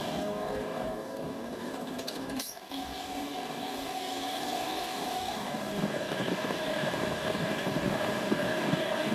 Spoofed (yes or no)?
yes